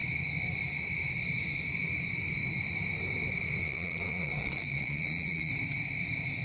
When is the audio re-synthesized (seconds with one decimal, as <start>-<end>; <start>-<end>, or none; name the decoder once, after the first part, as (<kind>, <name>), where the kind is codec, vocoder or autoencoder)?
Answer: 3.6-5.5 (vocoder, Vocos)